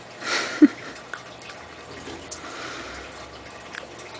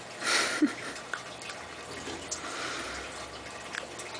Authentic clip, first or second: second